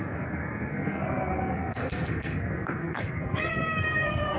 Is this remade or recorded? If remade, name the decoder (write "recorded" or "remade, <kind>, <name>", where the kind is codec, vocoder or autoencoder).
remade, codec, SNAC